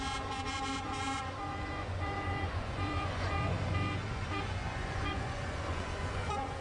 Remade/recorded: remade